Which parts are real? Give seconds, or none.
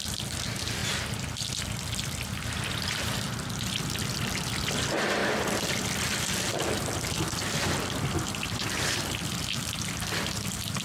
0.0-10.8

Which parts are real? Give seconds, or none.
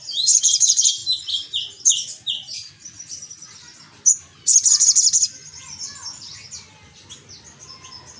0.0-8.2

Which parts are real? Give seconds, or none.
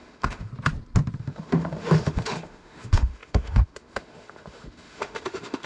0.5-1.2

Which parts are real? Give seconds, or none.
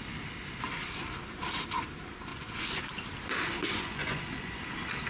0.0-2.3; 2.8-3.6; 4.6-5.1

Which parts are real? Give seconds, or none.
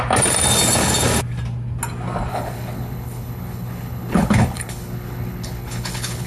0.0-2.3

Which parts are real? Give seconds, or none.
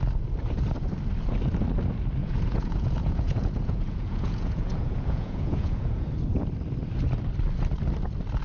0.0-2.2; 6.0-8.4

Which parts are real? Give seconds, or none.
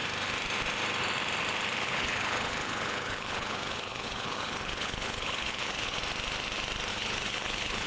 0.0-1.8; 6.0-6.9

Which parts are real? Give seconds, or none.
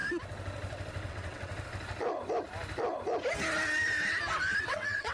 0.0-1.1; 1.5-4.6